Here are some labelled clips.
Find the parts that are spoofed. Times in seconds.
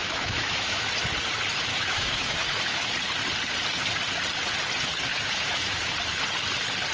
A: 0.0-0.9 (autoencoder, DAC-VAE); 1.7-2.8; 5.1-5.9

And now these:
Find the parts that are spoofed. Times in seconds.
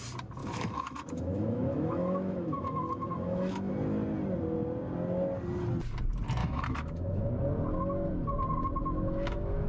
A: 0.4-3.7 (autoencoder, DAC-VAE); 6.4-7.3; 8.8-9.7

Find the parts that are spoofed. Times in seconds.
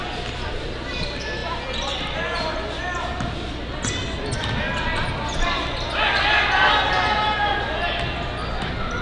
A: none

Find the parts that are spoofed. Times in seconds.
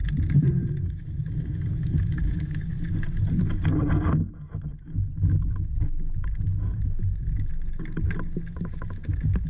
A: 0.7-2.7 (autoencoder, DAC-VAE); 4.5-7.5; 8.5-9.5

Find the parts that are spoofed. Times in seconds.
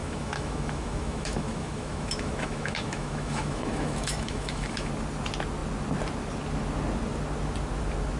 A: 0.0-4.9 (autoencoder, DAC-VAE)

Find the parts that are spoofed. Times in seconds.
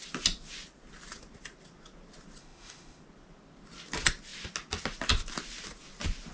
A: 2.4-3.0 (autoencoder, DAC-VAE)